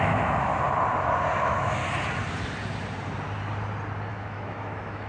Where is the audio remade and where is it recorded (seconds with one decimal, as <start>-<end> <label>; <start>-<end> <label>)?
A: 0.0-0.5 remade; 0.5-1.4 recorded; 1.4-1.8 remade; 1.8-4.1 recorded; 4.1-5.1 remade

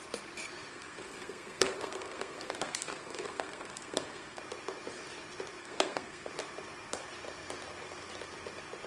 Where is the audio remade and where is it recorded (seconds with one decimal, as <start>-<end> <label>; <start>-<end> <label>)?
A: 0.0-0.7 recorded; 0.7-4.4 remade; 4.4-5.6 recorded; 5.6-6.3 remade; 6.3-8.9 recorded

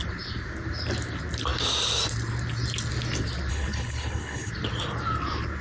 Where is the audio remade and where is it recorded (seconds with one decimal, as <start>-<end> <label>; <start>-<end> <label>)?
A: 0.0-3.5 recorded; 3.5-4.5 remade; 4.5-5.6 recorded

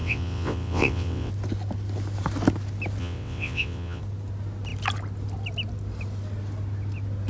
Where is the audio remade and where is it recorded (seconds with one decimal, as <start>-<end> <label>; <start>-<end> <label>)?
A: 0.0-1.3 remade; 1.3-3.0 recorded; 3.0-4.0 remade; 4.0-7.3 recorded

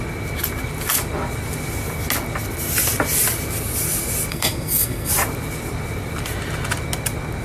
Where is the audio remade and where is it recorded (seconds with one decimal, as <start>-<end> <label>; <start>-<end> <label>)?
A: 0.0-4.3 recorded; 4.3-5.1 remade; 5.1-7.4 recorded

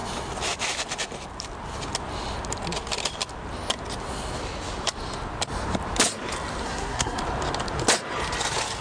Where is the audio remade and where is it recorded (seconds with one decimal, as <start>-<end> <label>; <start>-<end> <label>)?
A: 0.0-6.6 recorded; 6.6-7.2 remade; 7.2-8.8 recorded

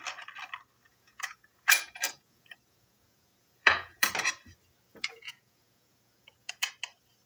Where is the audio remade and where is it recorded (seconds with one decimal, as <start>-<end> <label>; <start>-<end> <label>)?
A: 0.0-0.9 recorded; 0.9-4.1 remade; 4.1-4.9 recorded; 4.9-6.7 remade; 6.7-7.3 recorded